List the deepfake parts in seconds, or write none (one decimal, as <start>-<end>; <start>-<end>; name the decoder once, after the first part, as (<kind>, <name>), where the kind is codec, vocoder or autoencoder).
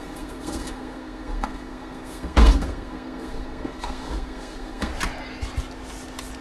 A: 0.0-4.9 (codec, SNAC)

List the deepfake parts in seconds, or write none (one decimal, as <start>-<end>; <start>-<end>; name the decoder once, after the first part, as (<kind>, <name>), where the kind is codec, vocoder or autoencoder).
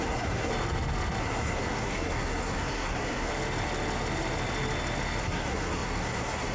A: 0.0-0.5 (codec, SNAC); 1.2-3.3; 5.2-6.5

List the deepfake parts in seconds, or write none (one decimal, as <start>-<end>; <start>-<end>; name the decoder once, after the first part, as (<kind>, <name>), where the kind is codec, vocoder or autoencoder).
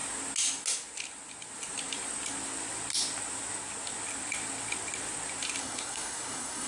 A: 5.6-6.7 (codec, SNAC)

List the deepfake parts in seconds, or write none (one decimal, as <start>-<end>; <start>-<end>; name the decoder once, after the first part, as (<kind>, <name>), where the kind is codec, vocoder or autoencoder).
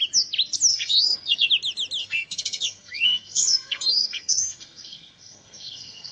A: 0.7-1.5 (codec, SNAC); 2.0-6.1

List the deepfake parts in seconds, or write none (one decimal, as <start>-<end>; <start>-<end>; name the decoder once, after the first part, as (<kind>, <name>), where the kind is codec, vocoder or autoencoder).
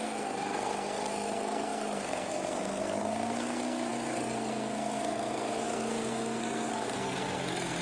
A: 0.0-7.8 (codec, SNAC)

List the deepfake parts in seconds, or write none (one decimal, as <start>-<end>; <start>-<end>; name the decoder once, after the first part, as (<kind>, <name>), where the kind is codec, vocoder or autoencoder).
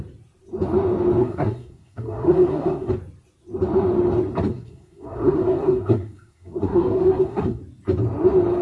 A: 1.2-2.9 (codec, SNAC); 4.5-7.6